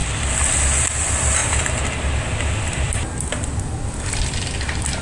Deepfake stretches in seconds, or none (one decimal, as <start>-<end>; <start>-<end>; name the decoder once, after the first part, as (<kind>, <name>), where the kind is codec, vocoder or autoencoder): none